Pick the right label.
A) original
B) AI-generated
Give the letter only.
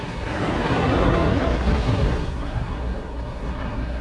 B